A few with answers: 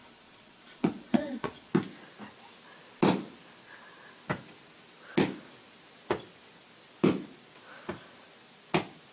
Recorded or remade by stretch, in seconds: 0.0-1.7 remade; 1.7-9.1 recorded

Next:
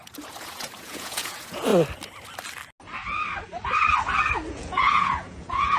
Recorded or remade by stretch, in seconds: 0.0-1.7 remade; 1.7-4.5 recorded; 4.5-5.8 remade

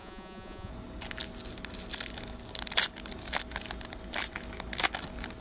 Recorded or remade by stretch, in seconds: 0.0-0.7 remade; 0.7-5.4 recorded

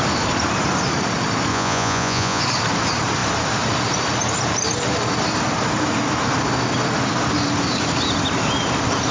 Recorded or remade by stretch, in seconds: 0.0-1.5 recorded; 1.5-2.4 remade; 2.4-9.1 recorded

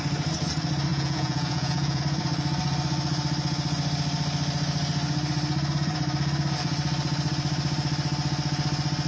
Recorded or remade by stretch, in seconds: 0.0-0.9 recorded; 0.9-2.0 remade; 2.0-9.1 recorded

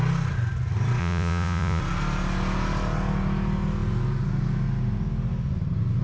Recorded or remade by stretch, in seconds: 0.0-1.0 recorded; 1.0-1.8 remade; 1.8-6.0 recorded

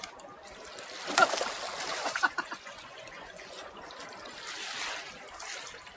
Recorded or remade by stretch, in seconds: 0.0-1.9 recorded; 1.9-3.9 remade; 3.9-6.0 recorded

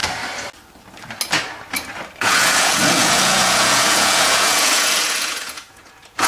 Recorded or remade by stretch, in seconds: 0.0-2.2 recorded; 2.2-6.3 remade